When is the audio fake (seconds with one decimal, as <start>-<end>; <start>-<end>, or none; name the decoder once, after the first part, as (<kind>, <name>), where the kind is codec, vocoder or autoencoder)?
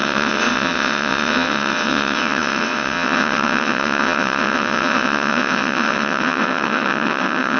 0.0-7.6 (vocoder, WaveNeXt)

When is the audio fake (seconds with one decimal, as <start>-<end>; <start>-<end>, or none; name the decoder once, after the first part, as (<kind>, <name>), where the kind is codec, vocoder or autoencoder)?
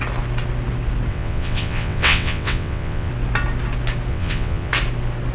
1.1-3.1 (vocoder, WaveNeXt); 4.1-4.7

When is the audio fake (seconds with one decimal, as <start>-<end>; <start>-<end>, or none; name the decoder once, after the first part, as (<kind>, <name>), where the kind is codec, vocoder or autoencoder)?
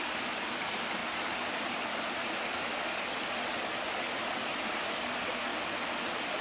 none